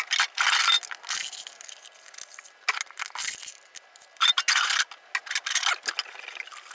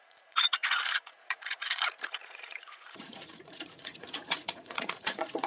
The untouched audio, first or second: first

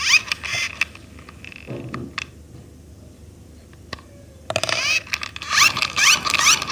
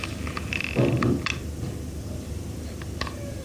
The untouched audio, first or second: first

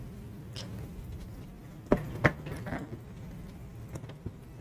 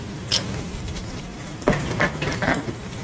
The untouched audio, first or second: first